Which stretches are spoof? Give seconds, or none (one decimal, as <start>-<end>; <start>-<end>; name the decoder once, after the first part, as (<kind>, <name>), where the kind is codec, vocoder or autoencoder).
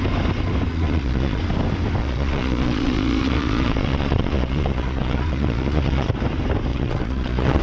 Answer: 0.7-1.4 (vocoder, Vocos); 2.0-6.1; 6.7-7.6